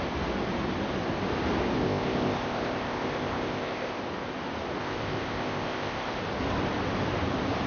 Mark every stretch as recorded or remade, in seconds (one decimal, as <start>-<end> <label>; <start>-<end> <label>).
0.0-1.8 recorded; 1.8-4.0 remade; 4.0-4.8 recorded; 4.8-6.2 remade; 6.2-7.7 recorded